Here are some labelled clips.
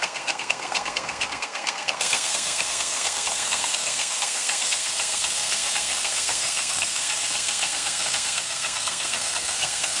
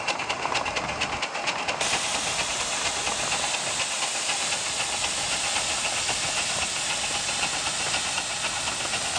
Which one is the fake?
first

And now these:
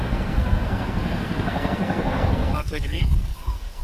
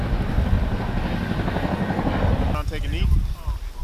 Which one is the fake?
first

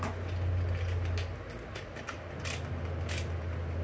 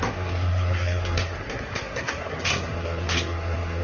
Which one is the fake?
second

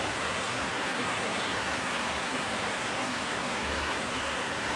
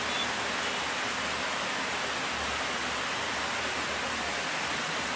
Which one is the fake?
first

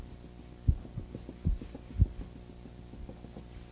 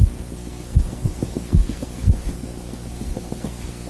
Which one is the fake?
second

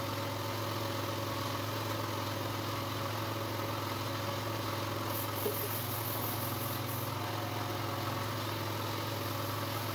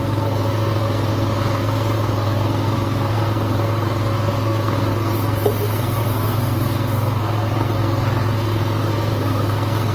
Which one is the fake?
second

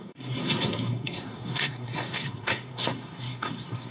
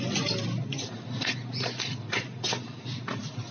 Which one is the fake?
first